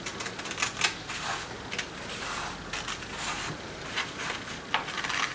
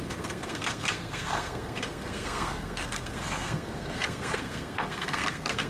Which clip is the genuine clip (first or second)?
first